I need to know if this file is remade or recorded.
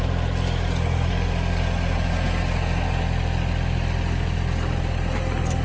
recorded